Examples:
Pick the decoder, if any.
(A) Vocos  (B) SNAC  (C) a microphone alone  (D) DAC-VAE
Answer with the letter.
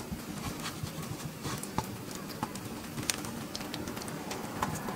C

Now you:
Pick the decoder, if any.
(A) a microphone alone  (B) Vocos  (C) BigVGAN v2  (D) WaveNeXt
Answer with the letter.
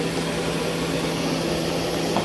A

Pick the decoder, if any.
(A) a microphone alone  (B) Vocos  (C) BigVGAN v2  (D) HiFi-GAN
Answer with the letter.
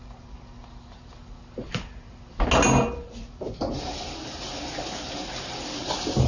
A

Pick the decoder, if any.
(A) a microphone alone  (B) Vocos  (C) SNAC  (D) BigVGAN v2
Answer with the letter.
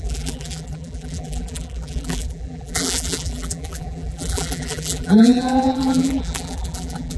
D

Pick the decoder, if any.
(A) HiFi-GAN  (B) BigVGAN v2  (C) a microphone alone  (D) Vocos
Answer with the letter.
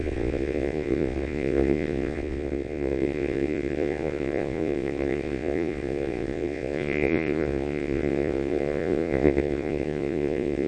D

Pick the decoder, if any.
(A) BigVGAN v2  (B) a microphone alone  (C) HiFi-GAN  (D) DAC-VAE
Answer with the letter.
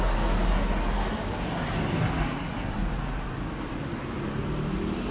B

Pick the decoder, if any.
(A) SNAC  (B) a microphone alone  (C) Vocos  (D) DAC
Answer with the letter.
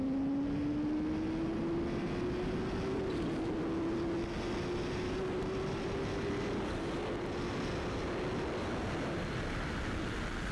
B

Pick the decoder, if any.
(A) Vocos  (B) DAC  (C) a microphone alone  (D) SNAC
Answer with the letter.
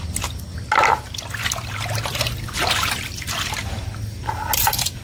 C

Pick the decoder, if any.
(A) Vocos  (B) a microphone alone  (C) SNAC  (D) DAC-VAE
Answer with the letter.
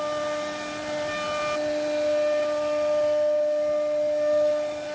B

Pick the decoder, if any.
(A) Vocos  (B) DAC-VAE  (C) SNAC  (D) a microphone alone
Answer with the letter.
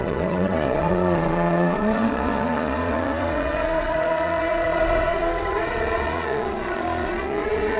A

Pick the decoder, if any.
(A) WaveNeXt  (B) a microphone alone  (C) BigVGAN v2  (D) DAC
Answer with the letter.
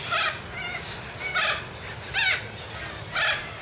B